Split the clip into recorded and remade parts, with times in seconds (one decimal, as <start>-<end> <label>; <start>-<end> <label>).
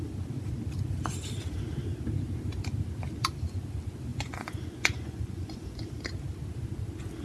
0.0-4.1 recorded; 4.1-5.8 remade; 5.8-7.2 recorded